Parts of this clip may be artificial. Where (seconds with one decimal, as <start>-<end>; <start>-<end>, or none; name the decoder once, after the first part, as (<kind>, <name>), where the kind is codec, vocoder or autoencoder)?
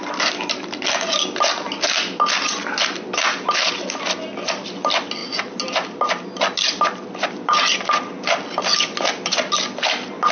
none